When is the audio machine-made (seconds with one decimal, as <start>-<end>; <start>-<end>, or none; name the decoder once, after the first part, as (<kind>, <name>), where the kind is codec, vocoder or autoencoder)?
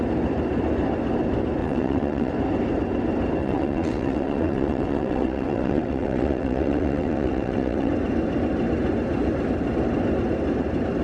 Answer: 1.6-2.3 (vocoder, WaveNeXt); 3.4-7.9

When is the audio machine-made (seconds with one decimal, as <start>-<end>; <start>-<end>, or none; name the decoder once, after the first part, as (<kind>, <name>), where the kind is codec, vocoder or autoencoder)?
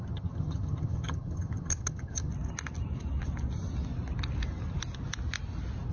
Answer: 0.0-2.3 (vocoder, HiFi-GAN)